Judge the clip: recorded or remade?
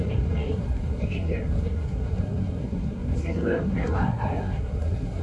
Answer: remade